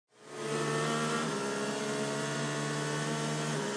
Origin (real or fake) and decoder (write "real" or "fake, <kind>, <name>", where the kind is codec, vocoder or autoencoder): real